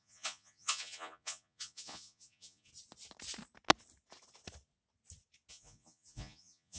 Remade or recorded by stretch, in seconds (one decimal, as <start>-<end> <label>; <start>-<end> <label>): 0.0-2.7 remade; 2.7-5.5 recorded; 5.5-6.8 remade